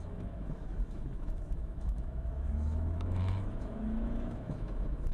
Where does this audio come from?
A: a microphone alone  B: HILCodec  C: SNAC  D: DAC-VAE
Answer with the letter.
D